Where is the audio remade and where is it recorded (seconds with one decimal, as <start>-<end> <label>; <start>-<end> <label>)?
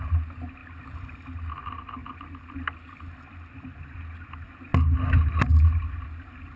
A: 0.0-6.6 recorded